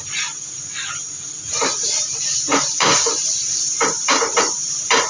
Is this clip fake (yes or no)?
yes